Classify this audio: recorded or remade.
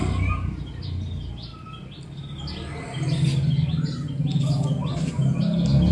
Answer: recorded